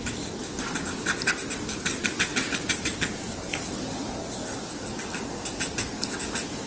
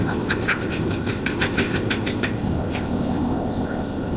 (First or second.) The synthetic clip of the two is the second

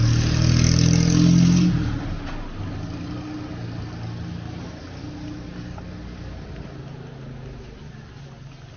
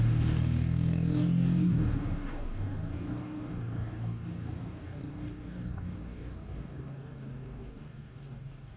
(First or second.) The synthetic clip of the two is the second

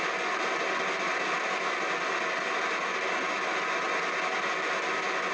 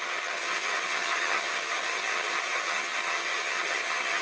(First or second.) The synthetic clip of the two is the second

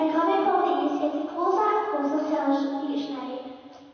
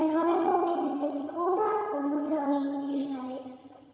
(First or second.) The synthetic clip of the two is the second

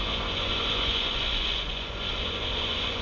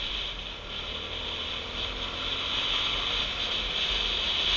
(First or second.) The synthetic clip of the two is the first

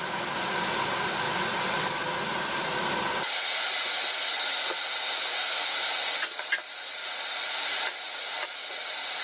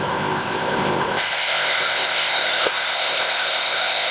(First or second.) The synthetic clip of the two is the second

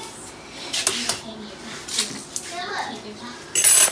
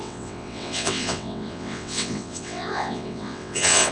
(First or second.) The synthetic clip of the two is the second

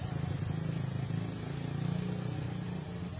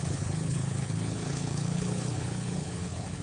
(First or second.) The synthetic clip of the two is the second